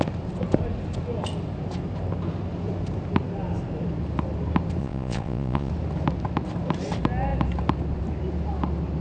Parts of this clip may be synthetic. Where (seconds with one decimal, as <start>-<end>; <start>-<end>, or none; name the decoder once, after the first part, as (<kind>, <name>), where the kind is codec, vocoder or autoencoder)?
4.8-5.7 (vocoder, Vocos)